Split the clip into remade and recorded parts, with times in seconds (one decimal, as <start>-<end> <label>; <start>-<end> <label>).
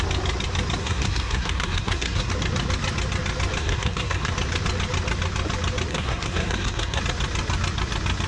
0.0-0.8 recorded; 0.8-2.3 remade; 2.3-3.6 recorded; 3.6-4.3 remade; 4.3-5.9 recorded; 5.9-7.0 remade; 7.0-8.3 recorded